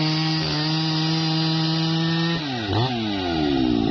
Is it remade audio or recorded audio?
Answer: recorded